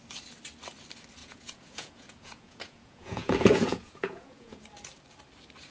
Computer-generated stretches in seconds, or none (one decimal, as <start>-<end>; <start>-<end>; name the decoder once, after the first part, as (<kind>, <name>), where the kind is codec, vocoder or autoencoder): 1.2-4.6 (vocoder, Vocos)